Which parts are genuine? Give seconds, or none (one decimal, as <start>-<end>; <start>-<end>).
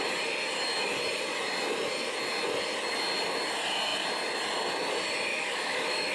0.0-5.3